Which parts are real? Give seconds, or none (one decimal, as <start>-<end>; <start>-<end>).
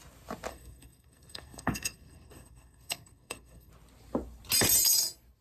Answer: 0.0-0.5; 3.7-5.4